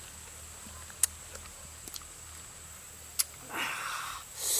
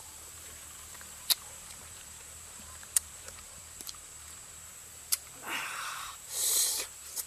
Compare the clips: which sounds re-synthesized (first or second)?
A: second